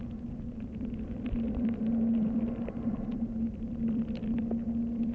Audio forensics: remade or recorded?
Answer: remade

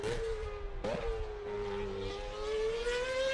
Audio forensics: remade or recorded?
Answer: recorded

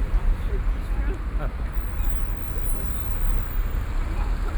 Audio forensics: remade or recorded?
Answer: remade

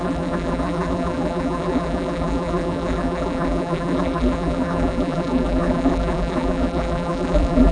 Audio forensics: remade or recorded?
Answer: remade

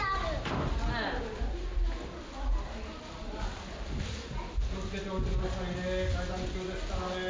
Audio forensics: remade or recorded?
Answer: recorded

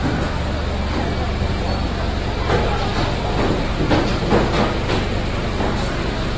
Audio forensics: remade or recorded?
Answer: recorded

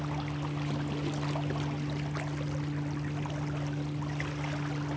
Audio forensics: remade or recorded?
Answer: recorded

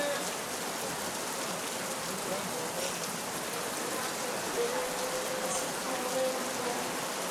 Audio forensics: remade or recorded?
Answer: recorded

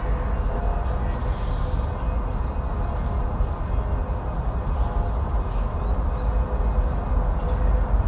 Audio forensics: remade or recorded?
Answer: recorded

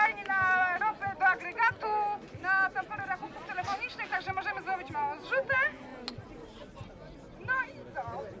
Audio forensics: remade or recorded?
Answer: recorded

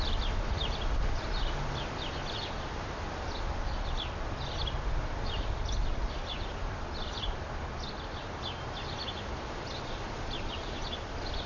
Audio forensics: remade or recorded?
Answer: recorded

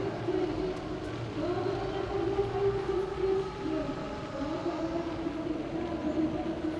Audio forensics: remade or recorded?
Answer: recorded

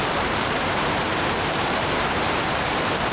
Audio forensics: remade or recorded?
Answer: remade